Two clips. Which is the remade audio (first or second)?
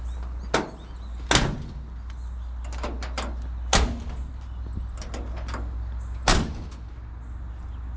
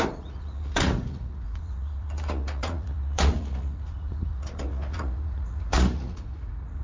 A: second